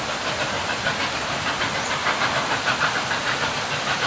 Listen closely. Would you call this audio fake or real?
real